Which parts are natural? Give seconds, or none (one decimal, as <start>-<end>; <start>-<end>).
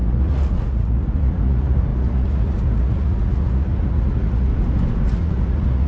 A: 4.5-5.1